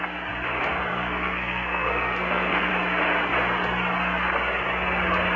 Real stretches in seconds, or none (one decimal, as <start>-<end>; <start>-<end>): 0.0-0.9; 2.7-5.4